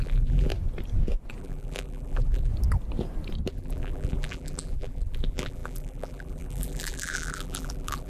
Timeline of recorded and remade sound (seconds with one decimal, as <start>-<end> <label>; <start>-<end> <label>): 0.0-0.5 remade; 0.5-1.4 recorded; 1.4-2.5 remade; 2.5-3.5 recorded; 3.5-8.1 remade